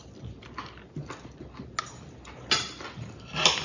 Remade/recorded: recorded